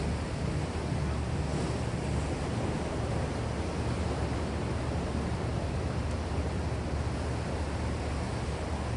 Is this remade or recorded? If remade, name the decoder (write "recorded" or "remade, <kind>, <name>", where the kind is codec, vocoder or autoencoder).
recorded